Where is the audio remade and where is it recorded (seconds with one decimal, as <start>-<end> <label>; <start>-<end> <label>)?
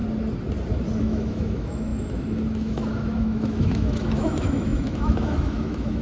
0.0-1.0 recorded; 1.0-6.0 remade